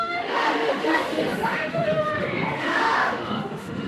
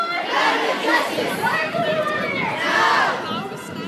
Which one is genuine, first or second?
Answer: second